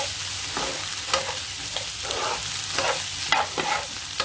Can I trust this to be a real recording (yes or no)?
yes